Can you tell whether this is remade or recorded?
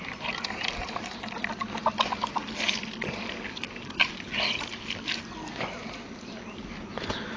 recorded